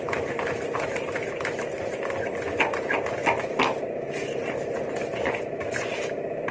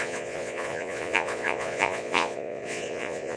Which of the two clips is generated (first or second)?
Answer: second